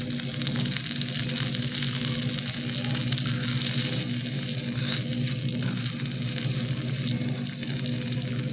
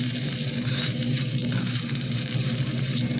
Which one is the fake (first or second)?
second